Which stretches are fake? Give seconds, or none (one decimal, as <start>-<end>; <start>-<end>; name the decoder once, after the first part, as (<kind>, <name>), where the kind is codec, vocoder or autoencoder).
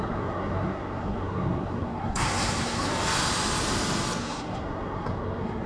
0.0-2.9 (codec, SNAC); 4.2-5.7